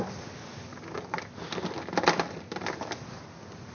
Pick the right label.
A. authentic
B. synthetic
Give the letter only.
A